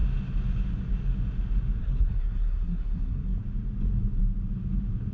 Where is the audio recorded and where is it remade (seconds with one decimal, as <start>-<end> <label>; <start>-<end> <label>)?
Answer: 0.0-1.8 recorded; 1.8-3.4 remade; 3.4-5.1 recorded